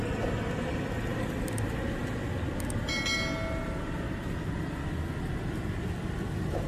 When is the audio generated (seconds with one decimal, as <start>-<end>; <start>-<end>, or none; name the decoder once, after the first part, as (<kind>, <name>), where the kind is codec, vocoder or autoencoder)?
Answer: none